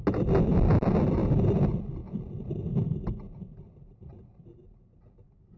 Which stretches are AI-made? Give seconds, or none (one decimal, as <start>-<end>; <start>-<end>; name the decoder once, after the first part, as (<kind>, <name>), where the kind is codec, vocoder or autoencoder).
none